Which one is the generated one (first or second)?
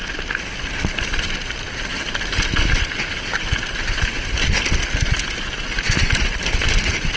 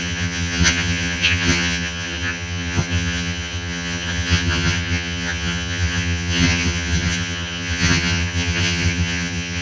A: second